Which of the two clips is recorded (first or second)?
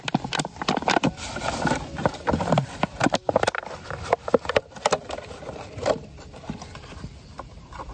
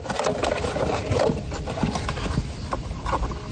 second